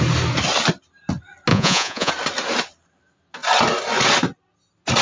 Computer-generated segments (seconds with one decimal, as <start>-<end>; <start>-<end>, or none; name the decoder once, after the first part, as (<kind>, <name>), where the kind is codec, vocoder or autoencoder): 1.5-2.1 (vocoder, Vocos)